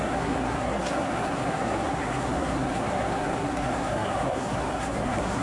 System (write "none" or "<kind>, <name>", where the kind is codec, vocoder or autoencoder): codec, SNAC